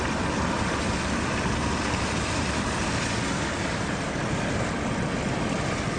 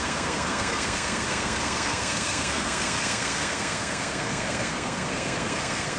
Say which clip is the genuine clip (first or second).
first